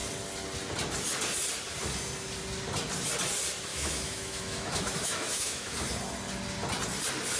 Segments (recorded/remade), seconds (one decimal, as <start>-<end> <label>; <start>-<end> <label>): 0.0-3.7 recorded; 3.7-5.7 remade; 5.7-7.4 recorded